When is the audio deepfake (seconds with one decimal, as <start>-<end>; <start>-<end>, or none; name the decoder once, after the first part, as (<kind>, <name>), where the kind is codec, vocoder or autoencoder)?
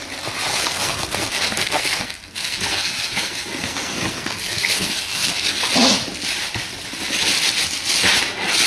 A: 0.5-5.6 (codec, SNAC)